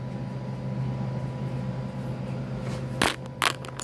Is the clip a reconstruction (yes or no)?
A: no